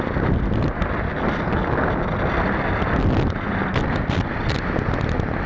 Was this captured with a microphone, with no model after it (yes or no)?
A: yes